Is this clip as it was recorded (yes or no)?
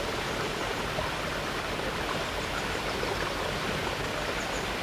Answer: no